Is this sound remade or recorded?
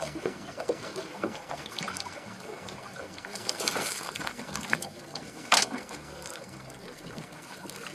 remade